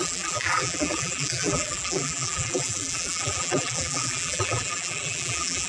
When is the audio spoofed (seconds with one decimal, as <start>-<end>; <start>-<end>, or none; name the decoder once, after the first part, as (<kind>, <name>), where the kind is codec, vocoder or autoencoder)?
0.0-5.7 (vocoder, BigVGAN v2)